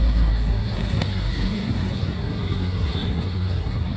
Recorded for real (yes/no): no